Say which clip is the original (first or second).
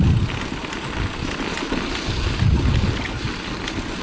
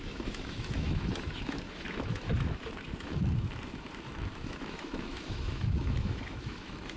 first